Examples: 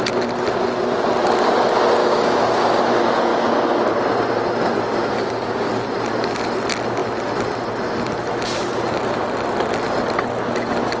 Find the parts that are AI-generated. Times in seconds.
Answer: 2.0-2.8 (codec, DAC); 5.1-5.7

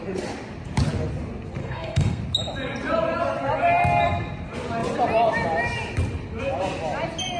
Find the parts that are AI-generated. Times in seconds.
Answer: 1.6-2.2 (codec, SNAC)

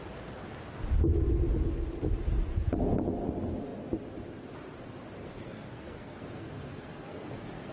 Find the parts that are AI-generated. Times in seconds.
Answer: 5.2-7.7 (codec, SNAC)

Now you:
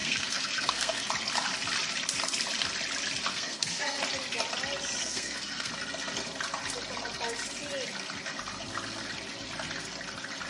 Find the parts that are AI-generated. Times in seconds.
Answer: 0.0-1.1 (codec, SNAC); 3.3-4.0; 5.0-5.7

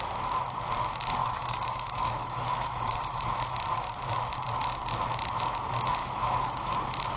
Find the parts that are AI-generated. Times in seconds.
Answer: 1.2-3.3 (autoencoder, DAC-VAE); 6.0-6.7

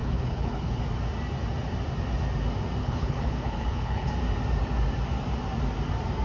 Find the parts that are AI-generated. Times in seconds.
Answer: 0.0-0.8 (codec, HILCodec); 2.8-4.1